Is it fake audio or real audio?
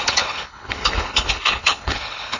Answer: fake